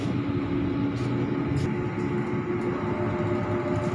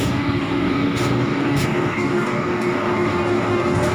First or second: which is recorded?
first